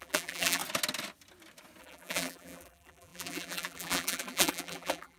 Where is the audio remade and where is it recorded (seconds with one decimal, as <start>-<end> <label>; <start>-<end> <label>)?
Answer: 0.0-0.6 remade; 0.6-1.8 recorded; 1.8-5.2 remade